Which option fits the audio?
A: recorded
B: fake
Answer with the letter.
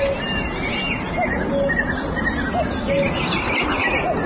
A